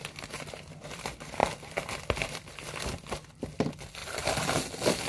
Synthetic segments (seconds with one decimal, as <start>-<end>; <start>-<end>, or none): 4.0-4.6